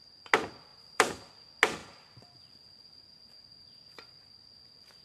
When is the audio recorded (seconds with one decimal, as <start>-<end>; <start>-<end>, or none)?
0.0-0.7; 1.3-1.8; 2.4-5.0

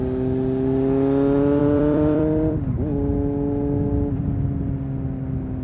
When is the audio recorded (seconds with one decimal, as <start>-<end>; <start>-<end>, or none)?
0.0-1.6; 2.6-5.6